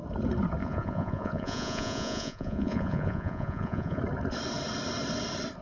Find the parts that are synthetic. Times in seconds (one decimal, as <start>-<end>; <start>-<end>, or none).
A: 0.6-4.0